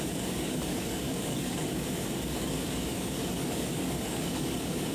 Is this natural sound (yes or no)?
no